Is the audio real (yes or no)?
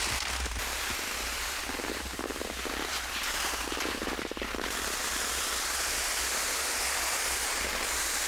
yes